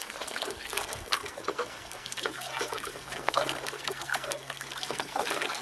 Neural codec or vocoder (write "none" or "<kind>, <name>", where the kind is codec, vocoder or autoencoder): codec, SNAC